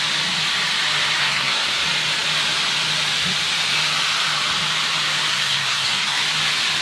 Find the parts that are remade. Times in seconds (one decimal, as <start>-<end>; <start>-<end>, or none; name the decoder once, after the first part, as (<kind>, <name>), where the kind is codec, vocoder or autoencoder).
1.2-1.8 (codec, SNAC); 5.3-6.2